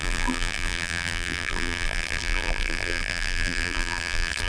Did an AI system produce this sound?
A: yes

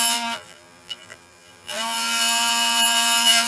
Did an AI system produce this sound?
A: yes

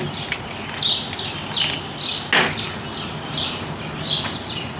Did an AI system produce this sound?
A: no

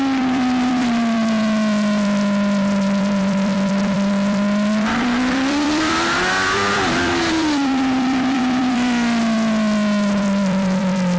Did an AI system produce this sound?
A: yes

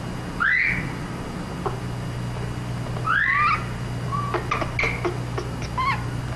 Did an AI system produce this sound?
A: no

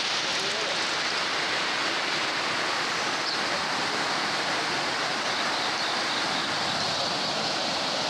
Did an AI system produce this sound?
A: no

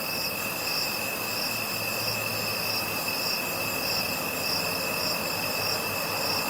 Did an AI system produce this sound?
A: no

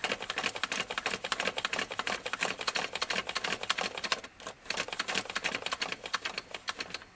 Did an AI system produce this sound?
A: no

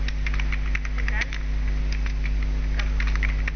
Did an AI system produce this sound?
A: no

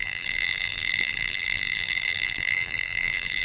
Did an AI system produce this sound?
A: yes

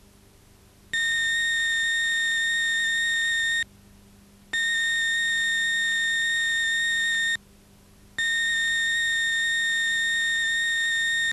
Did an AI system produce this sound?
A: no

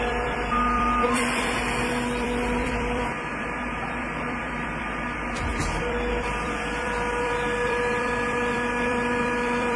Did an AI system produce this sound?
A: yes